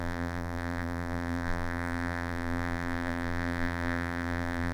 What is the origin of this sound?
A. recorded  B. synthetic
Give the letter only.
B